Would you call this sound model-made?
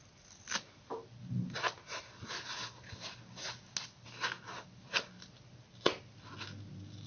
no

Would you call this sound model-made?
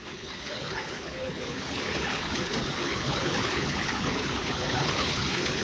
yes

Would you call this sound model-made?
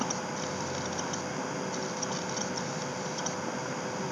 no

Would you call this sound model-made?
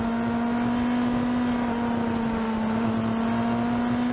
no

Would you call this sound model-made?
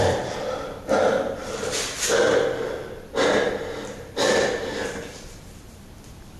yes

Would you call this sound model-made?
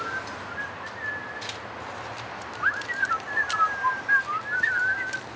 no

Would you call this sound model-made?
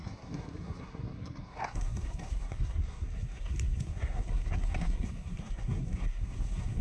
yes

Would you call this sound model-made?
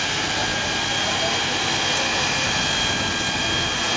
no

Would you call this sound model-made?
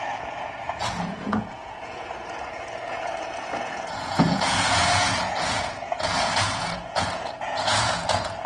yes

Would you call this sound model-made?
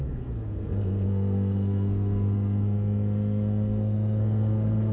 yes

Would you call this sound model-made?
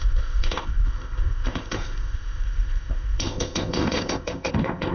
yes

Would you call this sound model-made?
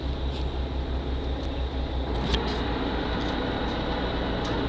no